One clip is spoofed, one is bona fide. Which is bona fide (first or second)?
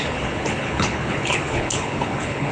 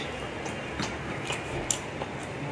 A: second